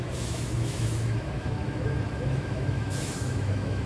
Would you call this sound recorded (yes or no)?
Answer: no